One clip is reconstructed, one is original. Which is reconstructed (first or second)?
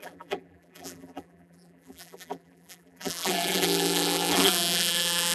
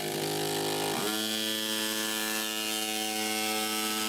first